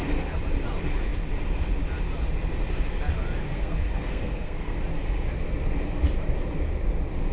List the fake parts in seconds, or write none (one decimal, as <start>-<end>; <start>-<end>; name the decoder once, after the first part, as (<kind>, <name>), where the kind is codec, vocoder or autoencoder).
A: 3.4-4.8 (codec, SNAC)